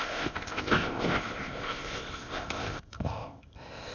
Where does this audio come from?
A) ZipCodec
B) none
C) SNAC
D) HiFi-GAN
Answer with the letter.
A